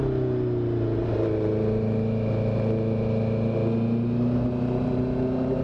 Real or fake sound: real